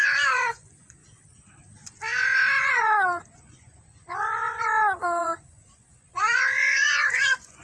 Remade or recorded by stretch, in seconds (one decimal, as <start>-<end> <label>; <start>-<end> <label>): 0.0-1.0 remade; 1.0-2.6 recorded; 2.6-7.6 remade

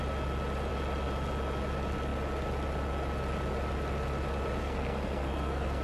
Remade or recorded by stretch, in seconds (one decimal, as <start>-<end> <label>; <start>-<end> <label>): 0.0-4.6 recorded; 4.6-5.8 remade

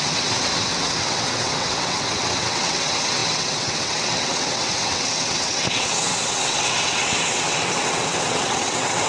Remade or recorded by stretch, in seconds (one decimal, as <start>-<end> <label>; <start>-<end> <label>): 0.0-9.1 remade

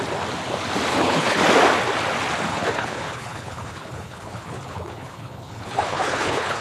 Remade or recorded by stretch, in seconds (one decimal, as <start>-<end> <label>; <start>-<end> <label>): 0.0-0.9 recorded; 0.9-1.4 remade; 1.4-2.5 recorded; 2.5-6.6 remade

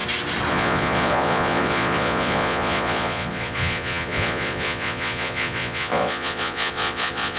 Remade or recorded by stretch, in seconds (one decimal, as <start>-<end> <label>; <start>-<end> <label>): 0.0-0.5 recorded; 0.5-7.4 remade

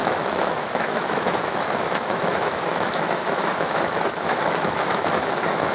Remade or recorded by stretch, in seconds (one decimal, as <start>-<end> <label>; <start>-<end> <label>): 0.0-5.7 remade